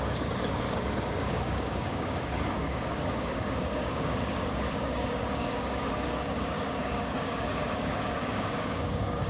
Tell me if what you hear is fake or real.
fake